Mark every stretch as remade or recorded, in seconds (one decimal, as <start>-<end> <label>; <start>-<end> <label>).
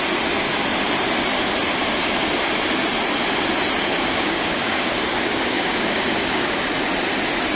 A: 0.0-4.0 recorded; 4.0-6.6 remade; 6.6-7.6 recorded